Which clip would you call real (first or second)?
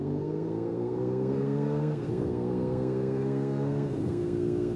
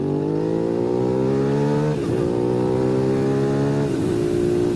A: second